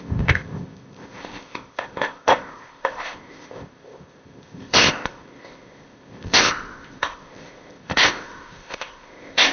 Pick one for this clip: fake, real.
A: fake